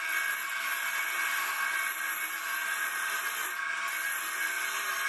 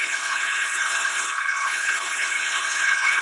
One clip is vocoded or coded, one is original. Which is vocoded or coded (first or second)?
second